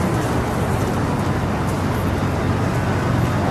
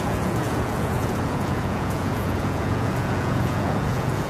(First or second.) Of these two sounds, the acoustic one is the first